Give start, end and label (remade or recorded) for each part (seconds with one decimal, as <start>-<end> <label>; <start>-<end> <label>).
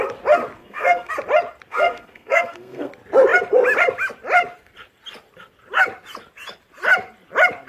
0.0-0.6 recorded; 0.6-1.1 remade; 1.1-1.7 recorded; 1.7-2.9 remade; 2.9-7.7 recorded